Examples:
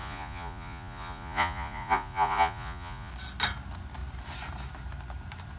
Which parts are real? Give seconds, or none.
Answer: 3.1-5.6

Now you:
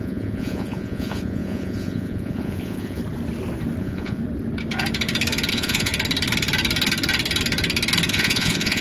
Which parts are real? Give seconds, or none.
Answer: 3.0-3.8; 4.2-5.5; 5.9-8.1

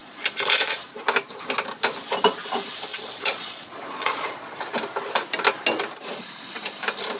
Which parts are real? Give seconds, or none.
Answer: 1.0-2.9; 4.6-7.2

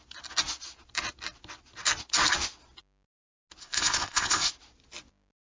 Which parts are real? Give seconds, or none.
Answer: 0.0-3.6; 4.5-5.5

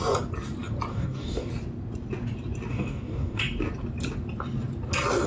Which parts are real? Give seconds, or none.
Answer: 0.0-0.9; 1.5-2.7; 3.4-5.3

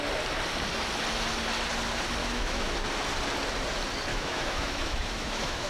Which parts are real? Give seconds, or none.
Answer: 0.0-2.2; 2.7-4.1

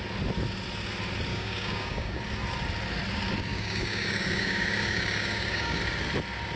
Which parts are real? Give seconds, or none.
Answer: 0.0-1.3; 2.2-3.5; 5.8-6.6